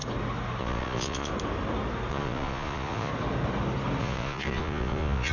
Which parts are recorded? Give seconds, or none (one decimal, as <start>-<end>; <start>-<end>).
0.0-0.6; 1.3-2.1; 3.1-4.0

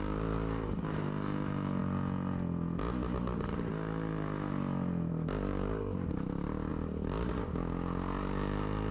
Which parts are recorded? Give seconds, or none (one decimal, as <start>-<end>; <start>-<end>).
0.0-8.9

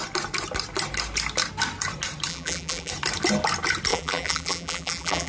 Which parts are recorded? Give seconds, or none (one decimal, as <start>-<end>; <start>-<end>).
0.0-2.3; 2.9-3.9

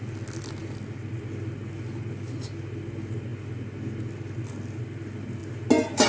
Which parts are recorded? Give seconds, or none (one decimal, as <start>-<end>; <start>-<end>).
0.0-6.1